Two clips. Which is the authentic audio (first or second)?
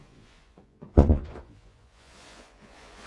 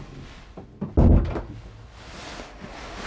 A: second